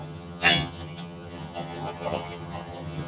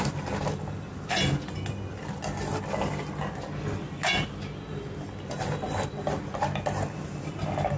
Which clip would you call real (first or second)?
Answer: second